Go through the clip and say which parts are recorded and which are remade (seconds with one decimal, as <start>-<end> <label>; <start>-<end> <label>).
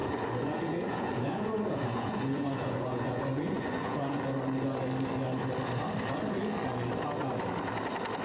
0.0-4.2 remade; 4.2-8.2 recorded